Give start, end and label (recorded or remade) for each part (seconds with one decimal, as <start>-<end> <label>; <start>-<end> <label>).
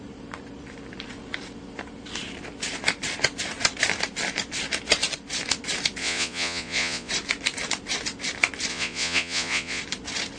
0.0-6.0 recorded; 6.0-7.1 remade; 7.1-8.7 recorded; 8.7-9.8 remade; 9.8-10.4 recorded